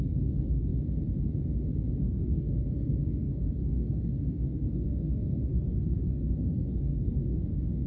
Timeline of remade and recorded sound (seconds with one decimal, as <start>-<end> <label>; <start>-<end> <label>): 0.0-0.7 remade; 0.7-2.0 recorded; 2.0-7.9 remade